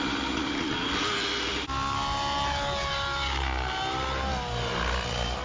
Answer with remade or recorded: recorded